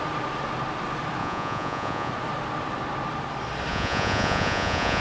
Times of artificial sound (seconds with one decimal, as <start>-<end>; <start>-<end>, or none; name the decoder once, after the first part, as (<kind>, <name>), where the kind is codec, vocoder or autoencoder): 1.2-2.1 (vocoder, Vocos); 3.7-5.0